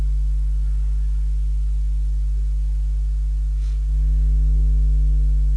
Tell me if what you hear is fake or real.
real